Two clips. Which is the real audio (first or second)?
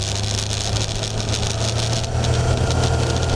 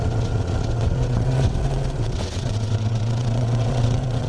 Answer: first